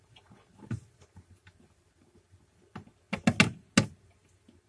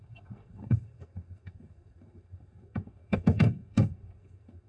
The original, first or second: first